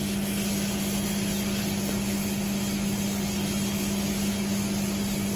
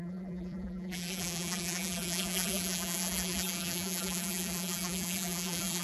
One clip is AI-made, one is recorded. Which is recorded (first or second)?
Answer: first